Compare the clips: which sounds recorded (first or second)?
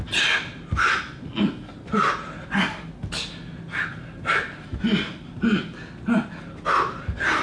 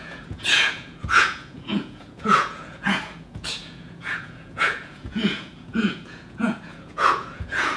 first